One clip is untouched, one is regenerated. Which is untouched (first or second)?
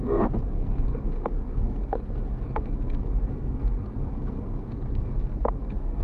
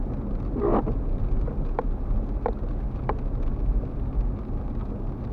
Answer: second